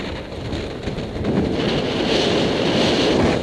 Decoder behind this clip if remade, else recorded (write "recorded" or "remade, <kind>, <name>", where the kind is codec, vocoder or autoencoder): recorded